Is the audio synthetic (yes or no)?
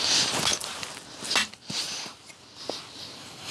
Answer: no